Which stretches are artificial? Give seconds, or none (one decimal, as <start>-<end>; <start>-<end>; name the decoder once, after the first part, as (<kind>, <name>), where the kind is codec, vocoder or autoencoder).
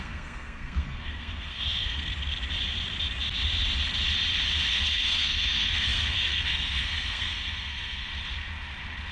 0.0-2.1 (codec, SNAC); 4.7-8.1